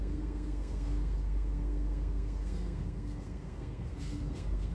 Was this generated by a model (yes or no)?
yes